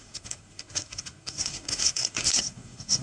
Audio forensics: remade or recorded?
remade